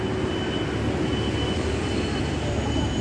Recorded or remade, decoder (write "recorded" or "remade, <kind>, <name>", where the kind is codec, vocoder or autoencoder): recorded